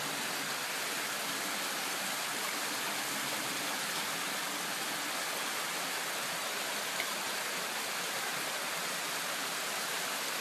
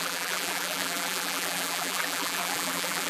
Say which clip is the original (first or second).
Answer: first